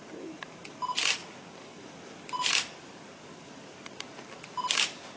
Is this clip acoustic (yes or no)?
yes